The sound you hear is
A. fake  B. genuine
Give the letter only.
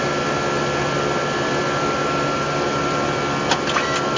B